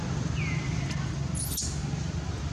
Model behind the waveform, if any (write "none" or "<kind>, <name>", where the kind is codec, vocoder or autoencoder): none